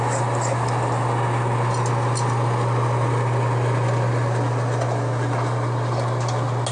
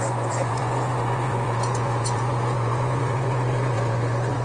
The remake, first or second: second